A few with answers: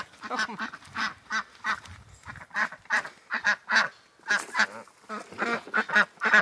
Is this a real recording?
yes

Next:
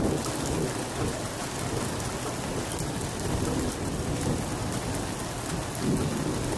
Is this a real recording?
yes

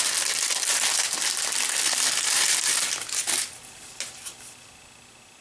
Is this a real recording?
yes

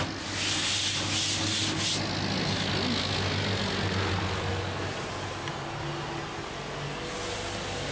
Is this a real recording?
yes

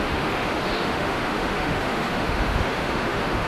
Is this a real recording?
no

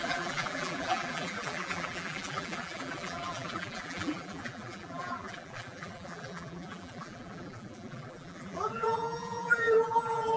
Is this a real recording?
no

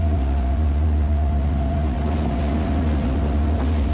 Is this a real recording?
no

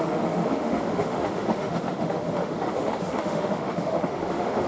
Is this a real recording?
no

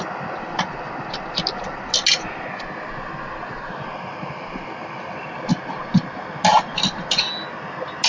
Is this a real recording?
yes